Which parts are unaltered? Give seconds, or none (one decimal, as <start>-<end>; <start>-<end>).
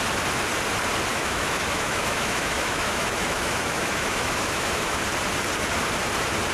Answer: 0.0-1.1; 5.0-6.5